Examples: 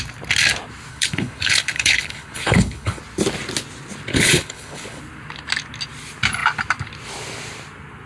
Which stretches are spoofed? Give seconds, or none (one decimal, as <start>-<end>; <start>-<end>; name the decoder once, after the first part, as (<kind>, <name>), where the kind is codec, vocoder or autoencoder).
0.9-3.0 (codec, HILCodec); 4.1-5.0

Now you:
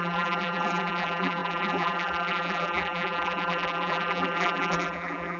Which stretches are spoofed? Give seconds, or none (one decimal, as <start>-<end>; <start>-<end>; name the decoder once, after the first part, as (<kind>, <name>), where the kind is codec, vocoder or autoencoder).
0.0-5.4 (vocoder, BigVGAN v2)

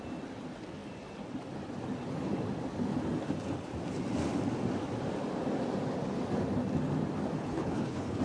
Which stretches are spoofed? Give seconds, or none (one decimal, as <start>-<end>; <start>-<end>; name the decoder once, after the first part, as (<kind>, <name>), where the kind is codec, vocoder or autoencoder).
7.4-8.2 (codec, HILCodec)